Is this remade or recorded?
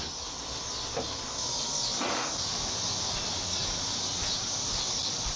recorded